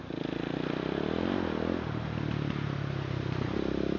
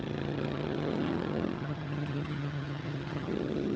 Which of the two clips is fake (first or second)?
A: second